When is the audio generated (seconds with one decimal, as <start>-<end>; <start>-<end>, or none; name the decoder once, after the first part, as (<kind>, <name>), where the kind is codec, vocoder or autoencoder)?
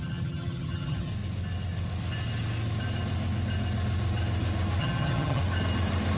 0.0-1.1 (vocoder, HiFi-GAN); 4.8-5.4